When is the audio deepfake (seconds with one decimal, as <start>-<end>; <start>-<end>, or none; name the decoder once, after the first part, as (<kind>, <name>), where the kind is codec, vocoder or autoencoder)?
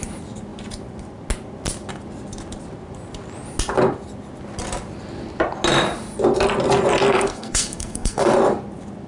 7.0-8.3 (codec, SNAC)